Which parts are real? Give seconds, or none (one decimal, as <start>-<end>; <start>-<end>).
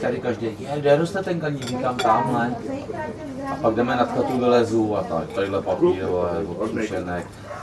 0.0-7.6